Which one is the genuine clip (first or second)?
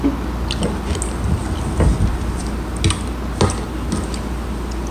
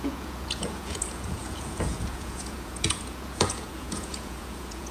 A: first